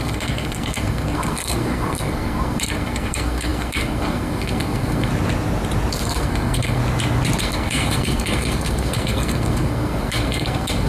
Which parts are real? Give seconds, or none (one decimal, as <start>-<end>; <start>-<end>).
5.1-5.9; 6.8-7.4